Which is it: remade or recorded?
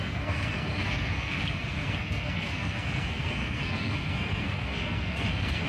remade